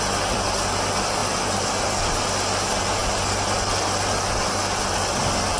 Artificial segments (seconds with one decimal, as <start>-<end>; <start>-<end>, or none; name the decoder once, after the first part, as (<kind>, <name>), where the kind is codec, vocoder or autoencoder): none